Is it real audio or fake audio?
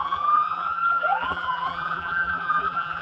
fake